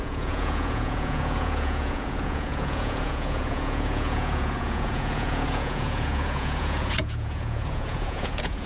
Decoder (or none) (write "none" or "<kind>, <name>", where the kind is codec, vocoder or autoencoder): vocoder, Vocos